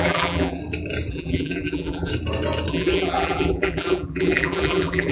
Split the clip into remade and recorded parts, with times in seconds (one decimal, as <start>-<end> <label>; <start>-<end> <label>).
0.0-0.6 remade; 0.6-1.1 recorded; 1.1-2.1 remade; 2.1-2.7 recorded; 2.7-5.1 remade